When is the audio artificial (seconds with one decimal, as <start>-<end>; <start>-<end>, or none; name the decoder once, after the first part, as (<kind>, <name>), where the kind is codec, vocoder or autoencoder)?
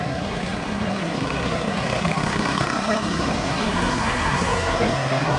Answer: 0.0-5.4 (codec, SNAC)